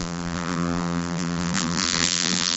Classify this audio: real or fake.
fake